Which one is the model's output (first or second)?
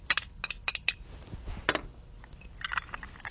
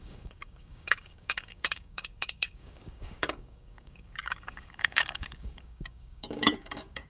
second